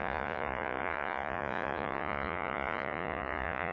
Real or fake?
fake